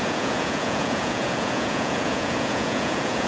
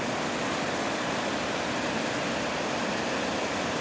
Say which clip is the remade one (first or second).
first